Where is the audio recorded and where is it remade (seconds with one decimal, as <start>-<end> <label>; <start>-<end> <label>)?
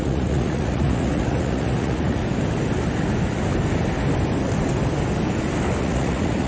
0.0-2.2 remade; 2.2-5.8 recorded; 5.8-6.5 remade